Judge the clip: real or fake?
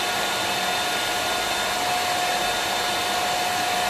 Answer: real